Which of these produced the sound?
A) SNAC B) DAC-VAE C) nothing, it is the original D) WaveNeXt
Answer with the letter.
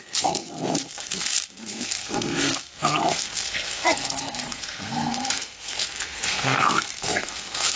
A